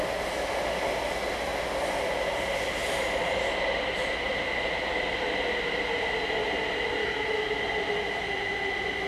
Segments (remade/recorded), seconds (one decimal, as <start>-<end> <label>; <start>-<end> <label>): 0.0-7.0 recorded; 7.0-7.6 remade; 7.6-9.1 recorded